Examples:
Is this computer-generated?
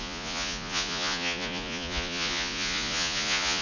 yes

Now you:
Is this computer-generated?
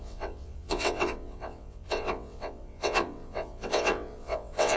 yes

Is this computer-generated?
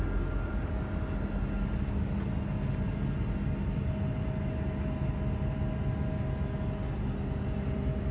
no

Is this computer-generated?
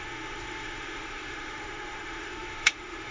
yes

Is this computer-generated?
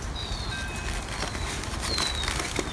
no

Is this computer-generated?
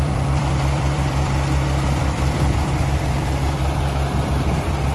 yes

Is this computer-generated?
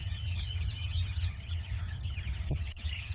yes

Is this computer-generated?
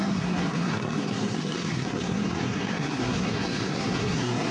yes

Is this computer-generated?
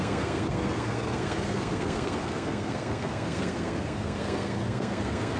yes